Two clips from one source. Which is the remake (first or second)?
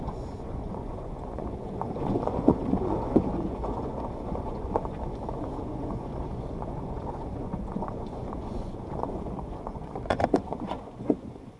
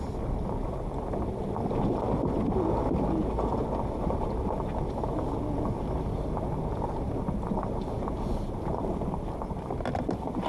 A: first